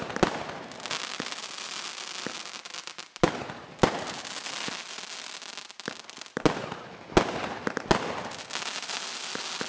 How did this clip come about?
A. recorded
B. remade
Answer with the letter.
A